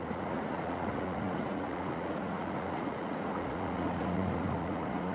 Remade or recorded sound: remade